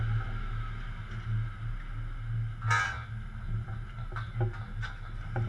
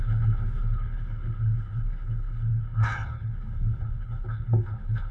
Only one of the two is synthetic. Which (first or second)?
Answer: second